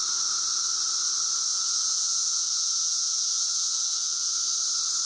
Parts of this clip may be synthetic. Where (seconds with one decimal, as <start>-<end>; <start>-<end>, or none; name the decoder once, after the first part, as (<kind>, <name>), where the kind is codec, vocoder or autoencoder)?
1.5-4.3 (vocoder, Vocos)